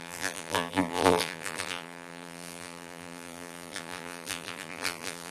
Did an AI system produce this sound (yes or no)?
yes